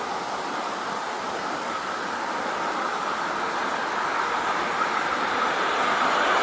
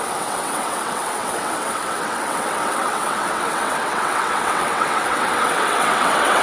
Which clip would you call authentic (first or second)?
first